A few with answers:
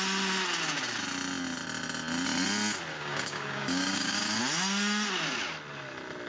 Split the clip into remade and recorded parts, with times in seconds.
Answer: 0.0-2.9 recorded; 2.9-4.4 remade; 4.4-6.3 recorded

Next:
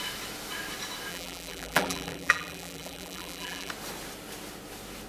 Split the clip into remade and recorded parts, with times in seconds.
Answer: 0.0-1.1 recorded; 1.1-3.7 remade; 3.7-5.1 recorded

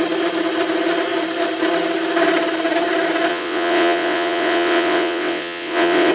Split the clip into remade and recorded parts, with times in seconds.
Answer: 0.0-3.3 recorded; 3.3-6.1 remade

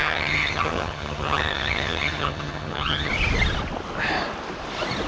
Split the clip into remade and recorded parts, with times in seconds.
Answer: 0.0-3.1 remade; 3.1-5.1 recorded